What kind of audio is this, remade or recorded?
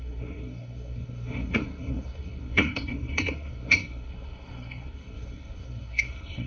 remade